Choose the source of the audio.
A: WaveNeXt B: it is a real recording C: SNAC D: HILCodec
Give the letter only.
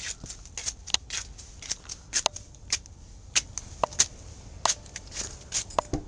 B